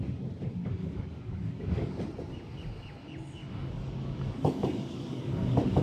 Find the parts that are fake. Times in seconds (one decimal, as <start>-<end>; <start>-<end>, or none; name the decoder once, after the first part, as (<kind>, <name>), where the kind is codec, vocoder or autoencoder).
0.6-2.0 (codec, DAC); 3.4-5.8